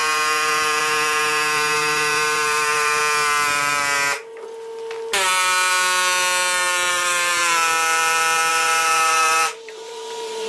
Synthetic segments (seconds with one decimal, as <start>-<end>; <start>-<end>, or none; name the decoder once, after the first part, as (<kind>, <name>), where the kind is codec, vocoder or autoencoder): 0.0-3.0 (vocoder, BigVGAN v2); 6.9-7.4; 8.5-10.5